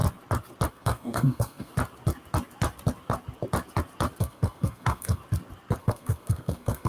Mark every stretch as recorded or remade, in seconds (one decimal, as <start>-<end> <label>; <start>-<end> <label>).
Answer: 0.0-0.7 recorded; 0.7-1.7 remade; 1.7-4.2 recorded; 4.2-5.2 remade; 5.2-5.8 recorded; 5.8-6.9 remade